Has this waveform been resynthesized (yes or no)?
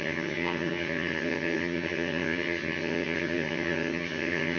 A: yes